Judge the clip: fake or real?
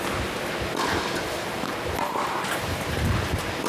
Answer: real